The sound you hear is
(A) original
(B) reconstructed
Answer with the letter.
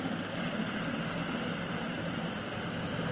A